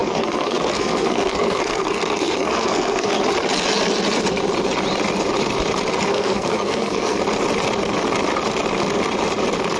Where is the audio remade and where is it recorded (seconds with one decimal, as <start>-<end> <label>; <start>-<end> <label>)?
0.0-3.1 remade; 3.1-6.1 recorded; 6.1-7.2 remade; 7.2-9.8 recorded